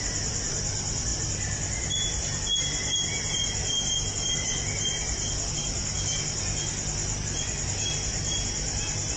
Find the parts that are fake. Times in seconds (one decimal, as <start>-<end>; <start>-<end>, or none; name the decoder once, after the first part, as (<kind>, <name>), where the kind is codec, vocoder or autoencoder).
none